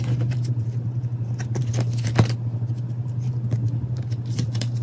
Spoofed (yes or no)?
yes